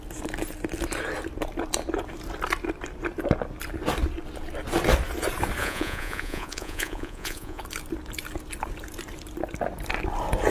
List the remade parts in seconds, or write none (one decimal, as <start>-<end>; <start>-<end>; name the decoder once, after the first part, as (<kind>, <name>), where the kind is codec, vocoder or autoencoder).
5.6-7.6 (vocoder, Vocos)